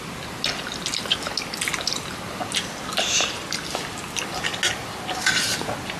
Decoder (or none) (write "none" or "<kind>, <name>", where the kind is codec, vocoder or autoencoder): none